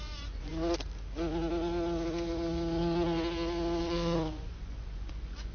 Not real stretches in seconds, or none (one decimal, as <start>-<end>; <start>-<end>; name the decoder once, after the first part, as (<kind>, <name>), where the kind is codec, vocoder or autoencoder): 0.0-0.5 (vocoder, Vocos); 3.8-5.5

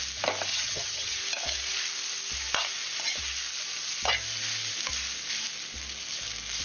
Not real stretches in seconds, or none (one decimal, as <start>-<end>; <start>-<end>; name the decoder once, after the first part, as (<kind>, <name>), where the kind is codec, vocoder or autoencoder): 0.5-1.2 (vocoder, HiFi-GAN)

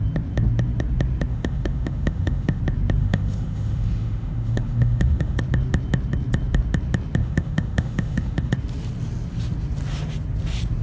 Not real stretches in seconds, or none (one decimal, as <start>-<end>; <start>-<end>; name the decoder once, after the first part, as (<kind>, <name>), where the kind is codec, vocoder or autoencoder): 1.3-2.6 (autoencoder, DAC-VAE); 3.0-5.4; 7.2-8.5

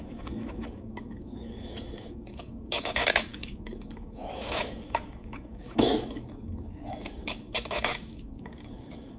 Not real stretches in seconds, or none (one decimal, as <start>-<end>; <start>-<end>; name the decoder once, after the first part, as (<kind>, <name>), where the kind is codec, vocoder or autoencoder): 0.0-9.2 (codec, DAC)

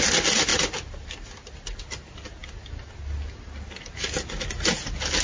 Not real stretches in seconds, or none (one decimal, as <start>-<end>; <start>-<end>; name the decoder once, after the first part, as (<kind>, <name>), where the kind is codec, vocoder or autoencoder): none